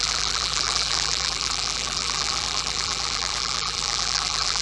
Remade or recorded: remade